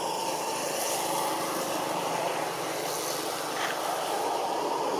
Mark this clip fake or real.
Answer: real